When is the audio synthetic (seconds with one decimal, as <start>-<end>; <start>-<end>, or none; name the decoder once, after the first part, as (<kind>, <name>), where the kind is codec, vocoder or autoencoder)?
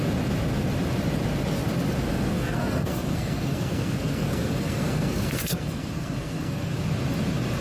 2.1-6.7 (codec, SNAC)